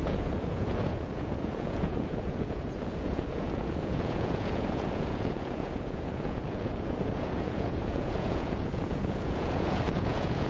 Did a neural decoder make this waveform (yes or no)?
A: yes